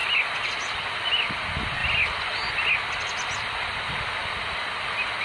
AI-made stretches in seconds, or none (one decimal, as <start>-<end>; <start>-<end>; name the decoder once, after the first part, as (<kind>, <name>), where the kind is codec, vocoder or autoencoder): none